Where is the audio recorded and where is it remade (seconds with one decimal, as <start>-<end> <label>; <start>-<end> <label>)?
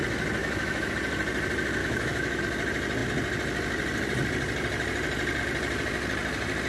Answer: 0.0-0.4 recorded; 0.4-0.9 remade; 0.9-1.8 recorded; 1.8-2.4 remade; 2.4-6.7 recorded